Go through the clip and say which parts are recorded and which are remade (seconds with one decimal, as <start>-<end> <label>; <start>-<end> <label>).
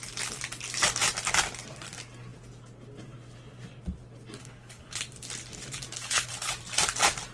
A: 0.0-4.4 recorded; 4.4-5.0 remade; 5.0-6.0 recorded; 6.0-6.5 remade; 6.5-7.3 recorded